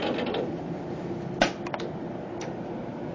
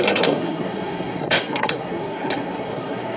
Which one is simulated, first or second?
second